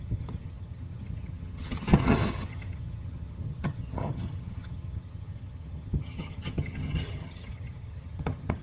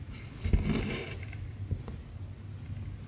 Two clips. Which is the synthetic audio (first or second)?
first